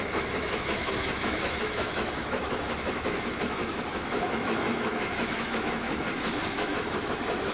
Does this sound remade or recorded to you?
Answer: remade